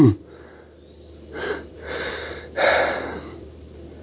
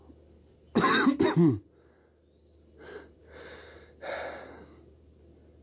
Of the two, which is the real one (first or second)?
second